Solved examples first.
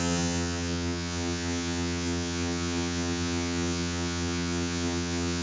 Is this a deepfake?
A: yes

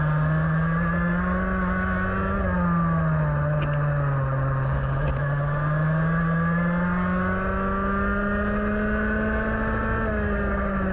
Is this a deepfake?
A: no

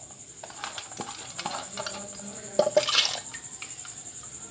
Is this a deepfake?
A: no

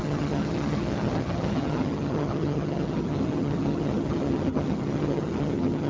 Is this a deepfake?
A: yes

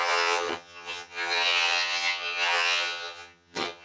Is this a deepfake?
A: yes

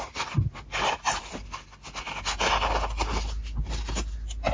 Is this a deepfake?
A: no